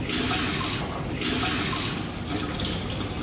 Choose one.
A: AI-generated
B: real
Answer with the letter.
B